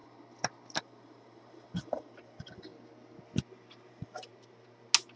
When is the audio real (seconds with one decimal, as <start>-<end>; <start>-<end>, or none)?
0.0-0.8; 2.7-3.9; 4.3-5.2